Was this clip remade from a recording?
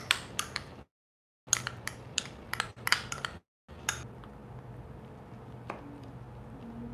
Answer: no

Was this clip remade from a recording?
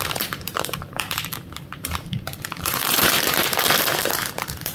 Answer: yes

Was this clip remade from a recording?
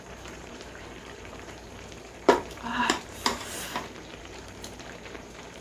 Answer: yes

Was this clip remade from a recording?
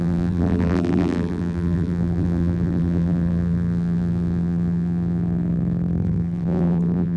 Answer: yes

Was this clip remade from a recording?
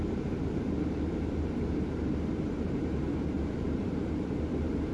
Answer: yes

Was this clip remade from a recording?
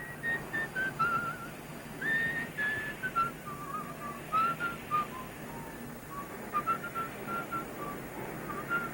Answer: no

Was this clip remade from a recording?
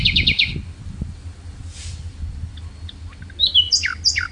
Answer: no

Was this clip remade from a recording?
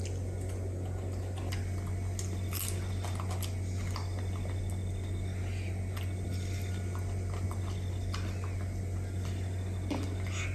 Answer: no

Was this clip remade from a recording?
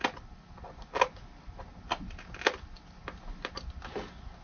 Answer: no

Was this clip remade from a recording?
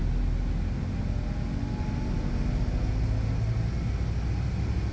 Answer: no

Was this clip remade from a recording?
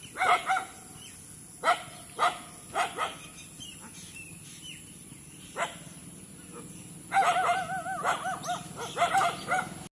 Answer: no